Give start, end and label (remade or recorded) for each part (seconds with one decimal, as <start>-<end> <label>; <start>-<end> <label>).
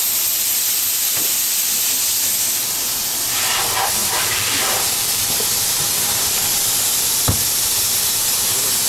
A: 0.0-4.0 recorded; 4.0-5.3 remade; 5.3-8.9 recorded